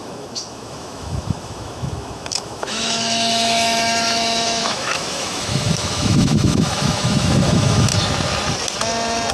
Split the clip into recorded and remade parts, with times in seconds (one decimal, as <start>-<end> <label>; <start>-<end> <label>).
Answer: 0.0-7.9 remade; 7.9-9.3 recorded